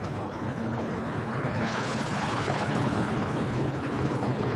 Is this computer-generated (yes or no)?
yes